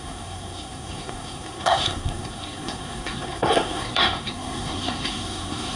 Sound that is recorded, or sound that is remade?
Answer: remade